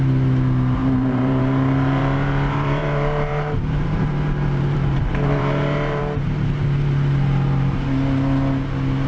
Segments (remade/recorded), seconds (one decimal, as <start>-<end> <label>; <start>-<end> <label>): 0.0-0.8 recorded; 0.8-6.0 remade; 6.0-9.1 recorded